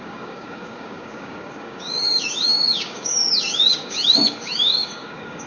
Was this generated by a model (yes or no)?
yes